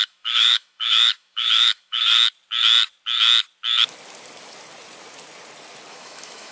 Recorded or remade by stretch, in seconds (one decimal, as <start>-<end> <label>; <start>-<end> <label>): 0.0-2.1 remade; 2.1-5.9 recorded; 5.9-6.5 remade